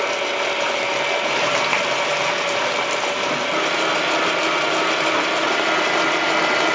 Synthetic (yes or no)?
no